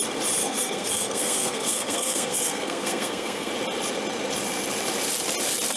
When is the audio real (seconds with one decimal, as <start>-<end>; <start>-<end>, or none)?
0.0-0.4; 3.5-5.8